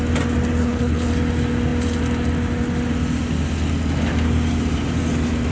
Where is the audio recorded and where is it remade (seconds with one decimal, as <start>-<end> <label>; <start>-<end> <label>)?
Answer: 0.0-0.6 recorded; 0.6-1.1 remade; 1.1-5.5 recorded